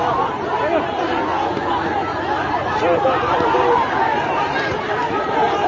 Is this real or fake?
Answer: fake